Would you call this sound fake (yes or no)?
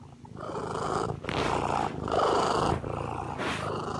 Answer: no